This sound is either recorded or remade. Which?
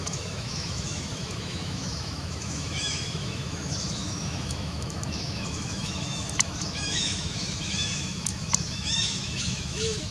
remade